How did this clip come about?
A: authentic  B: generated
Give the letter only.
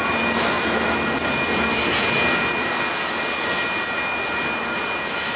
A